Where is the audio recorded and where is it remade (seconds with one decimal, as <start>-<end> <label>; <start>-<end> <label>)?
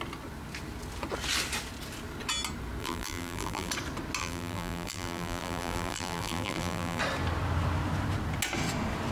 0.0-2.8 recorded; 2.8-3.7 remade; 3.7-4.2 recorded; 4.2-7.0 remade; 7.0-9.1 recorded